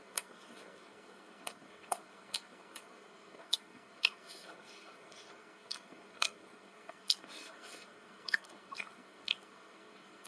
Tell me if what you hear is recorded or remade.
remade